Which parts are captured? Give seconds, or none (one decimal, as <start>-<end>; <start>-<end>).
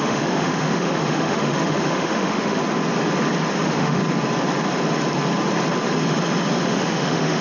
2.6-3.5; 4.0-6.6